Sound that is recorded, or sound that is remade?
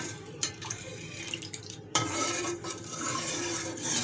remade